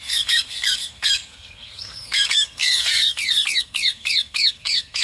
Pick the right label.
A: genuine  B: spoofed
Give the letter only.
B